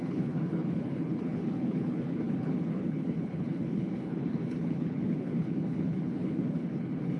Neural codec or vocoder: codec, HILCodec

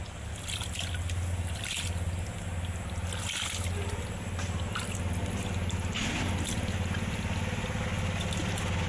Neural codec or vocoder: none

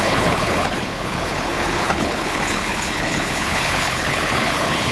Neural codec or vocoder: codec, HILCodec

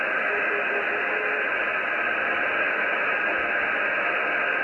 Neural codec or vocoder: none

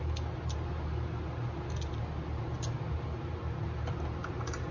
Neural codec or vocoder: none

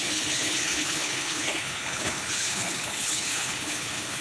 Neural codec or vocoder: codec, HILCodec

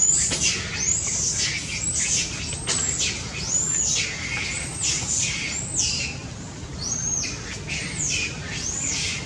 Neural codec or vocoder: none